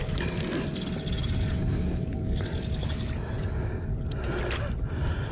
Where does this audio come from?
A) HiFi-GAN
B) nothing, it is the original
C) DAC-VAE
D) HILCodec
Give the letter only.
B